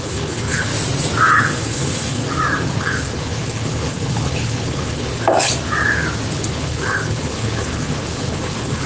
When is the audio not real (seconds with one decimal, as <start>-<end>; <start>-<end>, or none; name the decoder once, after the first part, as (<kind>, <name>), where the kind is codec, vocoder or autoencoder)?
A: 0.0-0.7 (codec, HILCodec); 1.3-2.2; 2.8-5.1; 6.5-8.9